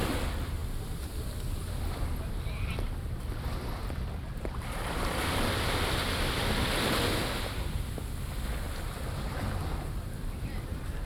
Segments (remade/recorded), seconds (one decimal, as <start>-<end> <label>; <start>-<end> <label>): 0.0-11.1 recorded